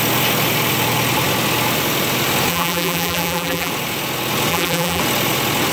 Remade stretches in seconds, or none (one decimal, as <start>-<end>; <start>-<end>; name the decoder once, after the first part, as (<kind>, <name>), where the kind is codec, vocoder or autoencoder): 2.5-3.7 (vocoder, BigVGAN v2); 4.5-5.0